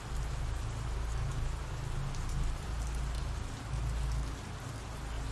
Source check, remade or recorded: recorded